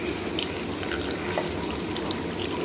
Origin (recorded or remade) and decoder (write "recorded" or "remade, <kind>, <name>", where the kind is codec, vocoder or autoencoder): recorded